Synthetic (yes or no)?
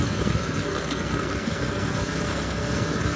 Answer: yes